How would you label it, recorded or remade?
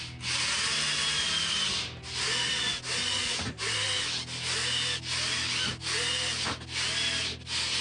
recorded